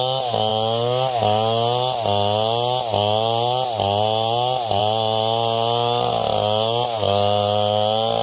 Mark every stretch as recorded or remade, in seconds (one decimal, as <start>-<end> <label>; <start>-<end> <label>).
0.0-8.2 recorded